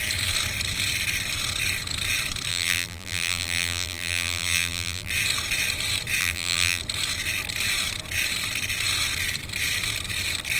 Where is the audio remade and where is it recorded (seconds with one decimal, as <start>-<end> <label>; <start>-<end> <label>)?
0.0-2.5 recorded; 2.5-5.1 remade; 5.1-6.2 recorded; 6.2-6.8 remade; 6.8-10.6 recorded